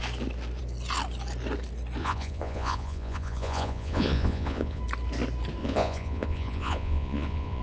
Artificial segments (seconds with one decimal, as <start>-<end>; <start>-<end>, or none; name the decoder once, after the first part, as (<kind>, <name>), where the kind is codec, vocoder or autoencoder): 2.0-4.8 (vocoder, Vocos); 5.6-7.6